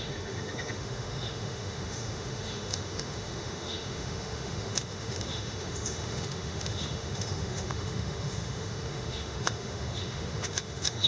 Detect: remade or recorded remade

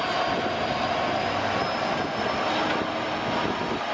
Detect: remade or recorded recorded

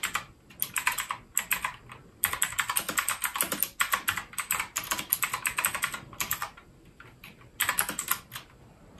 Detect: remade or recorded recorded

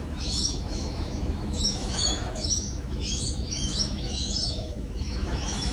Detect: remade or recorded remade